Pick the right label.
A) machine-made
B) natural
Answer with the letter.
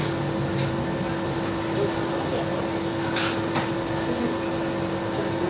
B